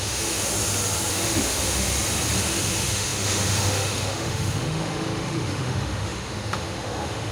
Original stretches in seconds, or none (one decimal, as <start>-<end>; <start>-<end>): 0.5-1.1; 1.9-2.4